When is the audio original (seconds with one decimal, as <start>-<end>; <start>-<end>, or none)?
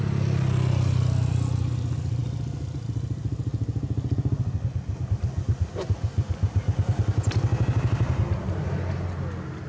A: 0.0-9.7